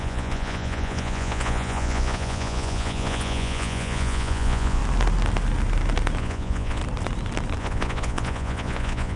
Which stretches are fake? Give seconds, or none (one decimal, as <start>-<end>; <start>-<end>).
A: 0.0-4.8; 6.2-6.8; 7.6-9.2